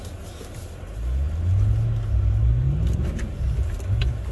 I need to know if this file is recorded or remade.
recorded